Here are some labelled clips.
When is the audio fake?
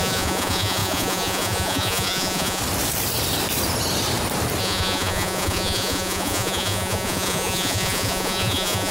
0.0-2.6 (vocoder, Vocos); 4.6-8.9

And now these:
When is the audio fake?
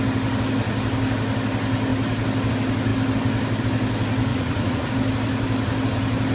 4.3-4.9 (vocoder, Vocos)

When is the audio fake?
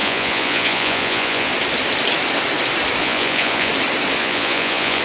0.0-1.5 (vocoder, Vocos); 3.0-3.7; 4.2-5.0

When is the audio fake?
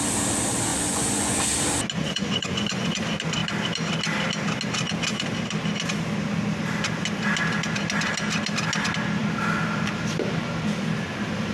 0.7-1.4 (vocoder, Vocos); 2.0-3.0